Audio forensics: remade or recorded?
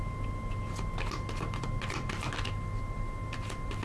recorded